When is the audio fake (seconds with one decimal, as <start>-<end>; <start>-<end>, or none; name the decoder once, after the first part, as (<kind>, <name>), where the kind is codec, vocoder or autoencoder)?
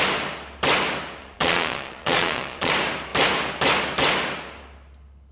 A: 1.2-2.7 (vocoder, Vocos)